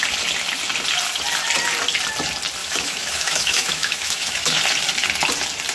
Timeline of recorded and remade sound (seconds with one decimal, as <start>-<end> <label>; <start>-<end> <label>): 0.0-2.6 recorded; 2.6-4.6 remade; 4.6-5.7 recorded

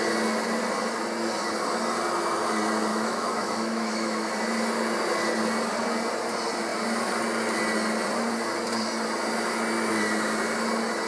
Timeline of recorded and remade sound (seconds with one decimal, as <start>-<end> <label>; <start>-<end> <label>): 0.0-2.9 recorded; 2.9-4.3 remade; 4.3-11.1 recorded

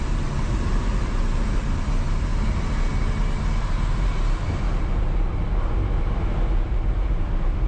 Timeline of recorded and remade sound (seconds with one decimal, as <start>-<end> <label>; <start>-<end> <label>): 0.0-2.3 remade; 2.3-6.9 recorded; 6.9-7.7 remade

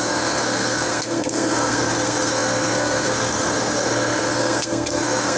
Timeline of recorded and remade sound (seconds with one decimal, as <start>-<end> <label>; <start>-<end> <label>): 0.0-5.4 remade

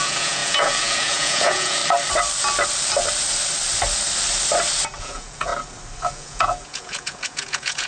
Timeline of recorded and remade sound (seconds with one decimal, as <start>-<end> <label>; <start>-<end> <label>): 0.0-1.8 remade; 1.8-5.0 recorded; 5.0-5.5 remade; 5.5-6.1 recorded; 6.1-7.9 remade

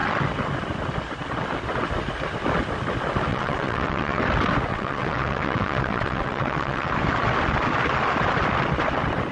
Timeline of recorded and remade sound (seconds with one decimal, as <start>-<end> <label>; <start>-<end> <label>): 0.0-3.3 recorded; 3.3-4.2 remade; 4.2-4.7 recorded; 4.7-6.9 remade; 6.9-9.3 recorded